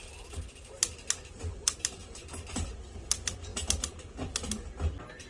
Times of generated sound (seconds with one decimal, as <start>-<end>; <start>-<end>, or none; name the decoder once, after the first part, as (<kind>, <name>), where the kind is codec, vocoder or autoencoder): none

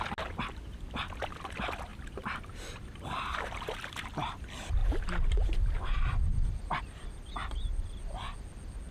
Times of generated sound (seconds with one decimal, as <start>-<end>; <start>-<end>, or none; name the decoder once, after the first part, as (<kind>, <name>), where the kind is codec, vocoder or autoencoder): 1.9-3.6 (vocoder, BigVGAN v2); 4.8-6.8; 7.4-8.0